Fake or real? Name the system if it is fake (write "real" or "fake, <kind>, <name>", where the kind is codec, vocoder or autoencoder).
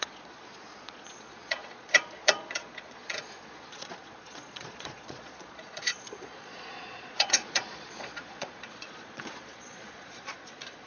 fake, vocoder, Vocos